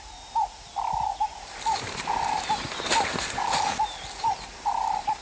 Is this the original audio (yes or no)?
yes